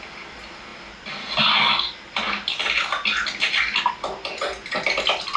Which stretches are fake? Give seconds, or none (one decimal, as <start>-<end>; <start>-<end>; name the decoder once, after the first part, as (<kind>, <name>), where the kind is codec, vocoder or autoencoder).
none